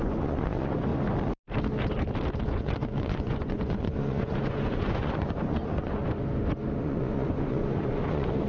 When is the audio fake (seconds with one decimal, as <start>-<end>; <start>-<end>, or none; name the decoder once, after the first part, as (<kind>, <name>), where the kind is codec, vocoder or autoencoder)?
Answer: 0.0-0.9 (vocoder, Vocos); 2.4-6.0; 6.8-8.5